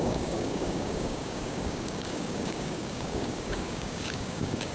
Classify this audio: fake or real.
fake